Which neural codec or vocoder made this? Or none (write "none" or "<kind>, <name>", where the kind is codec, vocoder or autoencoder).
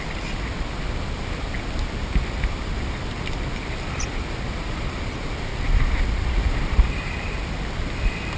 vocoder, BigVGAN v2